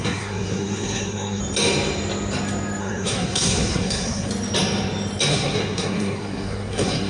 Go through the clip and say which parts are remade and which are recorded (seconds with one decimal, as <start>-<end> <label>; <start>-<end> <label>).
0.0-1.4 remade; 1.4-2.8 recorded; 2.8-4.3 remade; 4.3-5.3 recorded; 5.3-7.1 remade